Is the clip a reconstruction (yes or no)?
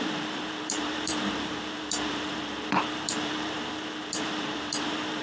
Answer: yes